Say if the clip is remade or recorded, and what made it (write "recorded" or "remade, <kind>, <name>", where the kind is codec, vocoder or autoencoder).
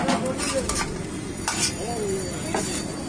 recorded